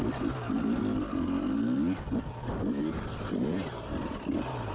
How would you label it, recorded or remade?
recorded